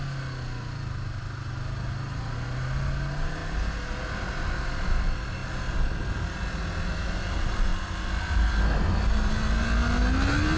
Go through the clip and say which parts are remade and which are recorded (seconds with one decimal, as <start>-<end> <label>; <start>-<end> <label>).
0.0-10.6 recorded